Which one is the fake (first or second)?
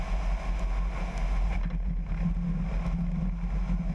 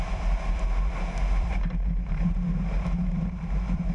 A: second